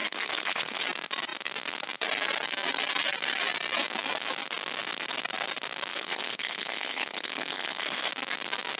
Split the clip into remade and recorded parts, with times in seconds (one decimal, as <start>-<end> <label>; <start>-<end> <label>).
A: 0.0-0.8 remade; 0.8-5.9 recorded; 5.9-8.1 remade; 8.1-8.8 recorded